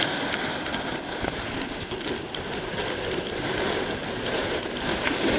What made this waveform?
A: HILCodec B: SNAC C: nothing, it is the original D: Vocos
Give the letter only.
C